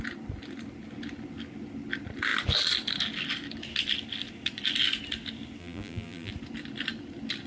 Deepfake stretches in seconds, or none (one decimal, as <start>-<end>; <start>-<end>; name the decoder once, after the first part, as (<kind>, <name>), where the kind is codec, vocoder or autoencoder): 5.6-6.3 (vocoder, BigVGAN v2)